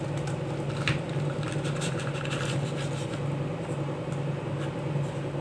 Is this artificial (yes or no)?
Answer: no